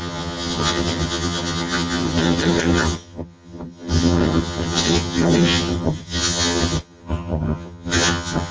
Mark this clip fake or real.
fake